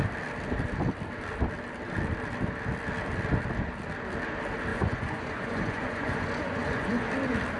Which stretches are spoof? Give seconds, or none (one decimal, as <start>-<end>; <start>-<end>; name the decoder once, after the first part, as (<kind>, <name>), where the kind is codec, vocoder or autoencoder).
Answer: 4.7-7.1 (vocoder, Vocos)